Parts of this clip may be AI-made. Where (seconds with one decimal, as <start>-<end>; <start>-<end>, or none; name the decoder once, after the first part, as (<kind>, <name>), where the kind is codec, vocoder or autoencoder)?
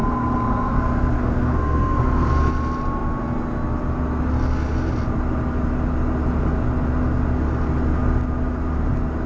0.0-2.3 (codec, SNAC)